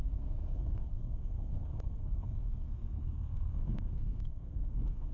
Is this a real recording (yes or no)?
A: no